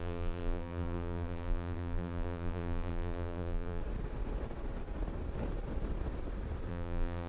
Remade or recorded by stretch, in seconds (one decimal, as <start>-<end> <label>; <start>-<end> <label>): 0.0-3.8 remade; 3.8-6.7 recorded; 6.7-7.3 remade

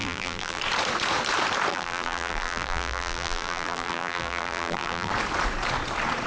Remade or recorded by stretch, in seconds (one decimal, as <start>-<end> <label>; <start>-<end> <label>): 0.0-0.6 remade; 0.6-1.7 recorded; 1.7-5.1 remade; 5.1-6.3 recorded

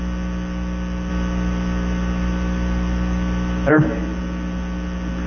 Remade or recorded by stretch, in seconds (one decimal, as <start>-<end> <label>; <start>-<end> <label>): 0.0-1.1 recorded; 1.1-3.7 remade; 3.7-5.3 recorded

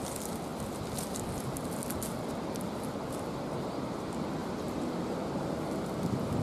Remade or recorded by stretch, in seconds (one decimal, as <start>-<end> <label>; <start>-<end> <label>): 0.0-6.4 recorded

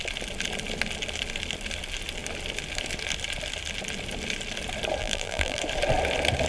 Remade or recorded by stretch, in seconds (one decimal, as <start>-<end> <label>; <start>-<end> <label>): 0.0-5.0 recorded; 5.0-5.6 remade; 5.6-6.5 recorded

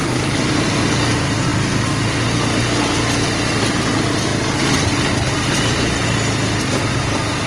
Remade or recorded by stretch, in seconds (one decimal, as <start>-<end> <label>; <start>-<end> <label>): 0.0-7.5 recorded

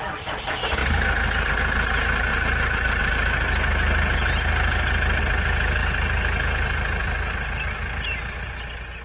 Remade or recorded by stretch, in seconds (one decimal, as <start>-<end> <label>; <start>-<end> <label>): 0.0-2.3 recorded; 2.3-3.0 remade; 3.0-9.0 recorded

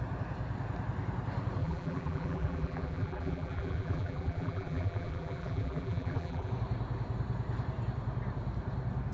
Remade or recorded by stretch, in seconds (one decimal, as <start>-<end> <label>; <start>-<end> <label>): 0.0-1.6 recorded; 1.6-6.5 remade; 6.5-9.1 recorded